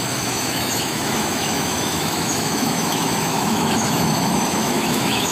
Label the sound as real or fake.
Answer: fake